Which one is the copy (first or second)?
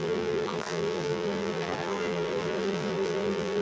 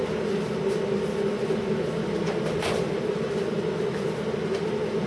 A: first